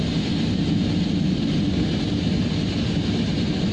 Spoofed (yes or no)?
no